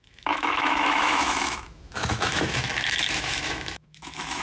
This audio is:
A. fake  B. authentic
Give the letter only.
A